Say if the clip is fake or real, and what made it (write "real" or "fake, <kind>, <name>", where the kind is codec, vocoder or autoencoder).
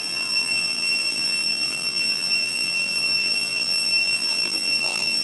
fake, vocoder, BigVGAN v2